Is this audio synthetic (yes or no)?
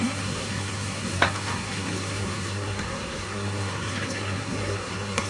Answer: yes